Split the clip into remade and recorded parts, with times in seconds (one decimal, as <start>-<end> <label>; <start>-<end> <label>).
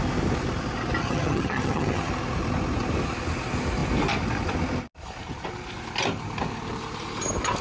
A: 0.0-1.0 recorded; 1.0-2.1 remade; 2.1-7.6 recorded